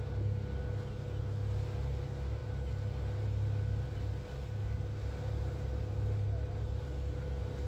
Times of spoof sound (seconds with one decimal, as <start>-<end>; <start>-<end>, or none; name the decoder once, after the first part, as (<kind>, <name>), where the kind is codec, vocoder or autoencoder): none